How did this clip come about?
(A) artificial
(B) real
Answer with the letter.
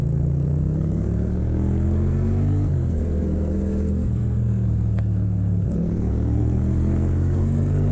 A